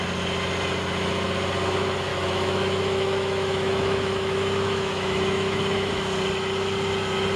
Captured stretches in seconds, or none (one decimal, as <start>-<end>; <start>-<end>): 0.0-2.1; 5.9-7.4